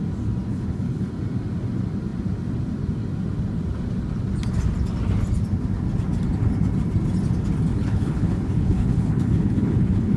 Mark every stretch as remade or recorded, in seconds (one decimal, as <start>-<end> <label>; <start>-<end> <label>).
0.0-0.5 recorded; 0.5-1.1 remade; 1.1-7.7 recorded; 7.7-10.2 remade